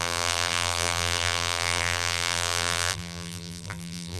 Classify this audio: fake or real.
fake